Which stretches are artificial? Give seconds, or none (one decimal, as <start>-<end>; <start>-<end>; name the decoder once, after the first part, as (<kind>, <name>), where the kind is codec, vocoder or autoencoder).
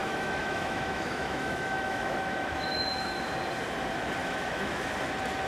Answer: 0.0-3.3 (autoencoder, DAC-VAE); 4.2-4.9